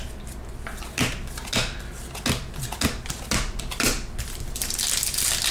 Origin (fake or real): real